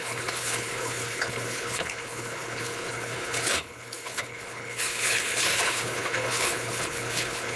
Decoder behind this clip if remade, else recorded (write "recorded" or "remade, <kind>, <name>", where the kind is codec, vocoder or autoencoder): remade, codec, HILCodec